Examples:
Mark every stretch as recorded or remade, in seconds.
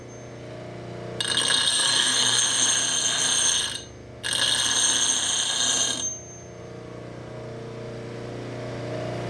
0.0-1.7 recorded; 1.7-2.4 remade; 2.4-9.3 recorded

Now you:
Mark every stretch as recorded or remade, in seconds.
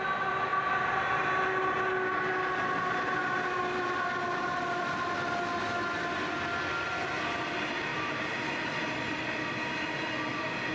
0.0-7.9 recorded; 7.9-9.2 remade; 9.2-10.7 recorded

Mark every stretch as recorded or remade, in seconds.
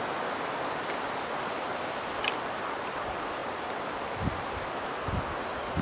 0.0-5.8 recorded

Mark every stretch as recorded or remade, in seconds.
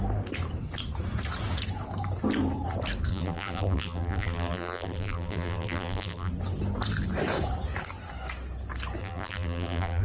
0.0-3.1 recorded; 3.1-6.3 remade; 6.3-9.0 recorded; 9.0-10.0 remade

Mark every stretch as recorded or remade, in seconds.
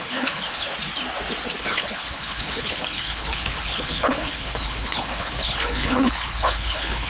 0.0-0.7 remade; 0.7-1.6 recorded; 1.6-7.1 remade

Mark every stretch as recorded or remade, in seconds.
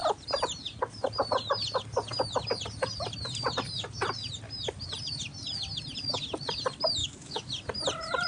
0.0-7.0 recorded; 7.0-7.5 remade; 7.5-8.3 recorded